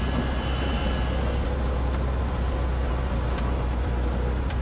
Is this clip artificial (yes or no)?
no